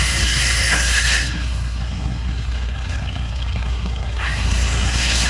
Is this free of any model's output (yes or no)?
no